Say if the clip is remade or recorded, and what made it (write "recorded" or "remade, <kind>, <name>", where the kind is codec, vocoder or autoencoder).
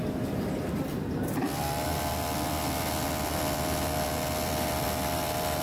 remade, vocoder, BigVGAN v2